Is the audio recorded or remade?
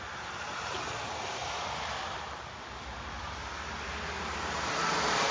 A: recorded